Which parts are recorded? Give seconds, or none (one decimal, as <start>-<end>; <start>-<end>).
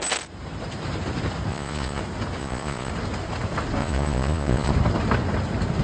0.0-1.5; 2.0-2.4; 2.9-3.8; 4.7-5.8